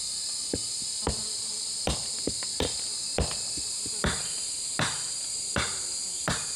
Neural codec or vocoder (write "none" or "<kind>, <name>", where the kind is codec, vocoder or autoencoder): none